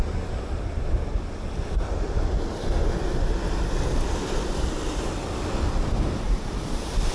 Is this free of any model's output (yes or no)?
yes